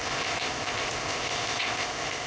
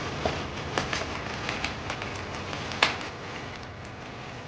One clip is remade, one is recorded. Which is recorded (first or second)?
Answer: second